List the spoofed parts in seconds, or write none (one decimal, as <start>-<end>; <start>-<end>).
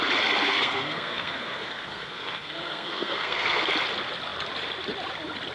0.4-3.7